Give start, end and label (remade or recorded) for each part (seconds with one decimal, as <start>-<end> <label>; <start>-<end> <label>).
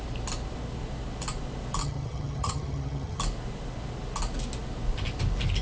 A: 0.0-1.8 recorded; 1.8-3.2 remade; 3.2-5.6 recorded